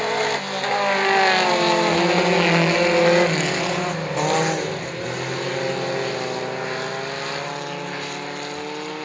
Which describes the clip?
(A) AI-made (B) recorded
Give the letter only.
B